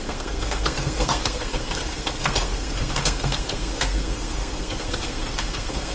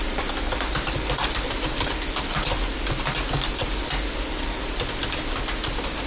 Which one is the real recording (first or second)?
second